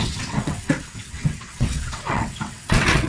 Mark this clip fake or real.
fake